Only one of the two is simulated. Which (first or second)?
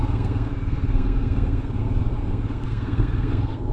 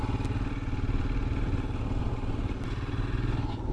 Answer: first